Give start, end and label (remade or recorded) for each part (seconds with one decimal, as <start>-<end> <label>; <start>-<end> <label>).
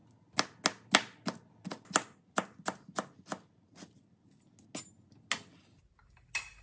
0.0-6.6 recorded